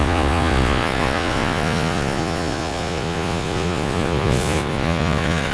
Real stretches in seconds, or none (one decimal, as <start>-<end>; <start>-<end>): none